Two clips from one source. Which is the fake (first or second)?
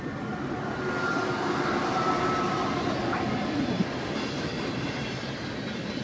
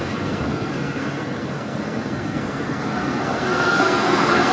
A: second